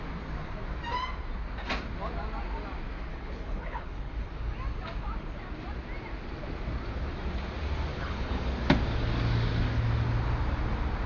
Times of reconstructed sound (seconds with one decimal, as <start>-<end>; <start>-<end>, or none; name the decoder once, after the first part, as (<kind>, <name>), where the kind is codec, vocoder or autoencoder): 3.1-4.3 (codec, HILCodec); 7.9-8.5